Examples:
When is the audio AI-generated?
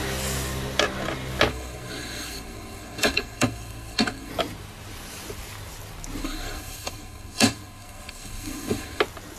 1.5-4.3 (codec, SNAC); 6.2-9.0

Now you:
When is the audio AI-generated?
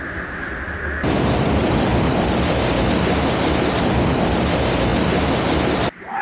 none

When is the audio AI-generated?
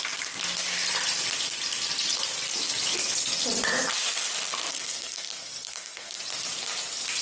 4.7-6.2 (codec, SNAC)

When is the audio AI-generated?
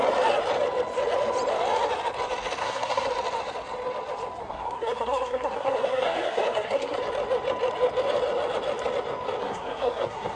2.6-3.1 (codec, SNAC); 4.4-7.0; 9.4-10.4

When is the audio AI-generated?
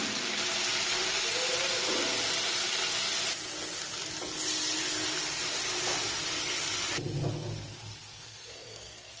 8.1-9.2 (codec, SNAC)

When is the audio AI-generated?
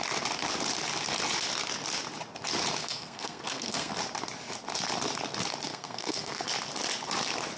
2.8-3.9 (codec, SNAC); 5.7-6.4